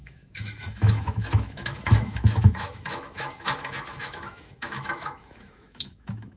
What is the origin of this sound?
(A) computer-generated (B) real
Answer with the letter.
A